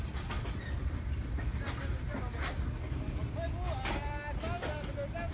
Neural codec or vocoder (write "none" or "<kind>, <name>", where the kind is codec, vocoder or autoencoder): none